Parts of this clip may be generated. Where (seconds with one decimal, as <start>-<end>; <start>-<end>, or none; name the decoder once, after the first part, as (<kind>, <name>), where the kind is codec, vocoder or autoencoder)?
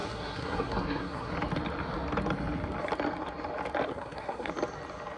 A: 0.0-1.3 (codec, SNAC); 3.9-4.5